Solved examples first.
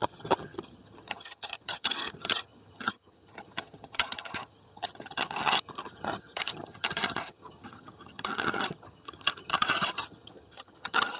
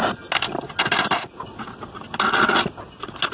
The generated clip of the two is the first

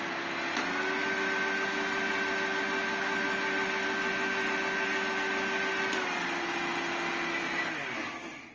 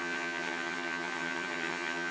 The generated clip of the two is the second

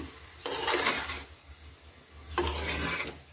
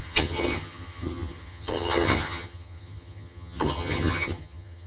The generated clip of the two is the second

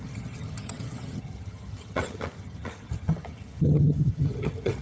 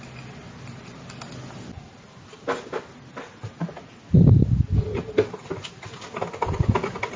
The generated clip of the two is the first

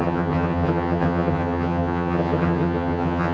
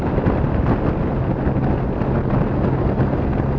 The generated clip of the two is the first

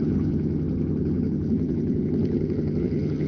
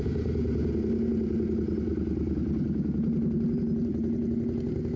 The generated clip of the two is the first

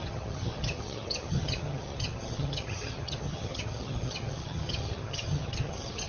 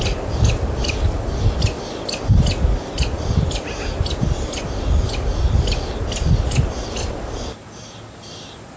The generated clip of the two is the first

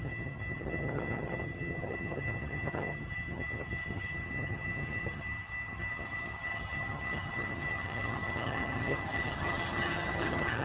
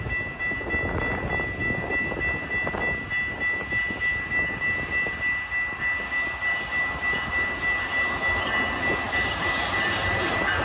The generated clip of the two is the first